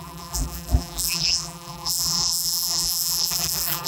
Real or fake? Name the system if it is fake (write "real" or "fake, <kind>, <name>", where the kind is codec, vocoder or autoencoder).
fake, vocoder, BigVGAN v2